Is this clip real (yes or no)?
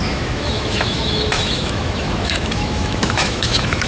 no